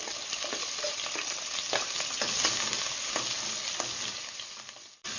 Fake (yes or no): no